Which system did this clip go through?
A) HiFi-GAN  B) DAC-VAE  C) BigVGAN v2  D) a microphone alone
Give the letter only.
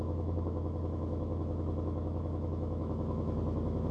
B